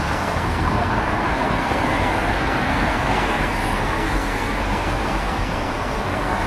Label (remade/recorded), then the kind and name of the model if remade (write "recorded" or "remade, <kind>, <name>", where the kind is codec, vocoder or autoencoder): remade, codec, SNAC